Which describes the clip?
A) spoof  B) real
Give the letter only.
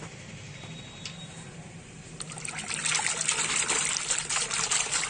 A